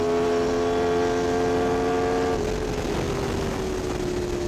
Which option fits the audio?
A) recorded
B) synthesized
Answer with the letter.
A